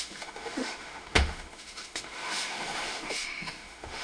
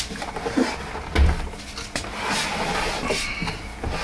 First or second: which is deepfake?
first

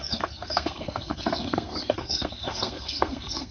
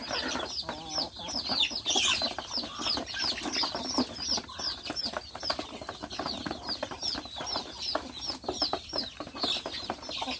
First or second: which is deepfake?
first